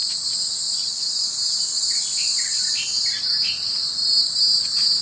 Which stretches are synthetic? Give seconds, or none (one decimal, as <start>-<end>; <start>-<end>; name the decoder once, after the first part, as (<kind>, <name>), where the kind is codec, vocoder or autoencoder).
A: none